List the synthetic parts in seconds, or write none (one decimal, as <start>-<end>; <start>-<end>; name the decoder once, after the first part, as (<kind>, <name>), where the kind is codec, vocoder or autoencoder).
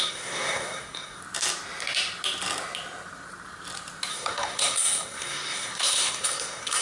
0.0-1.2 (codec, SNAC); 4.1-6.8